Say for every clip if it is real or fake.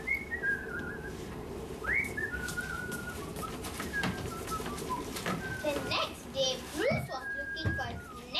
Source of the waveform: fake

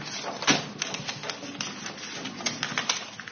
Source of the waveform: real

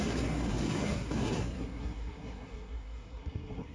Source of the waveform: fake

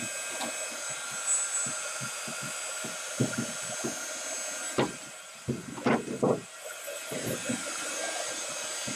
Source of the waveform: real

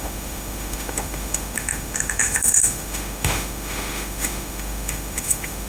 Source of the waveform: fake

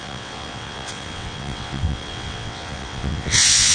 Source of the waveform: fake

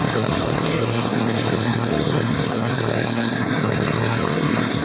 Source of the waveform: fake